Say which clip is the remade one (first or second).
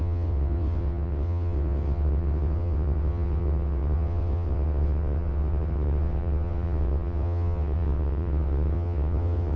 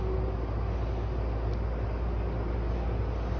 first